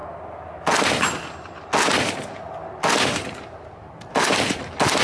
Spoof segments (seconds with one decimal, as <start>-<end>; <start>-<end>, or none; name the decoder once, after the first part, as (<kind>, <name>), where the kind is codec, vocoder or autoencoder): none